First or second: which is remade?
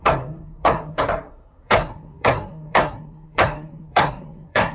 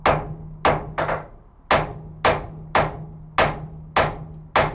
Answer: first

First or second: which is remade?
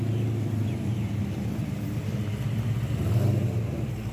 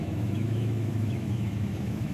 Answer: second